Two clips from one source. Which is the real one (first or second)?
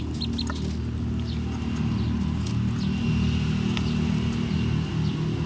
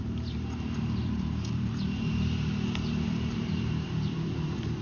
first